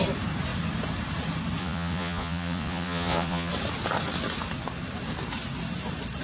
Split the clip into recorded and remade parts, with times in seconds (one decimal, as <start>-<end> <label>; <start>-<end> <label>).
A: 0.0-1.6 recorded; 1.6-3.5 remade; 3.5-6.2 recorded